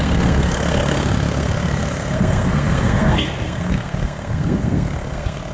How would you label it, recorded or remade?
remade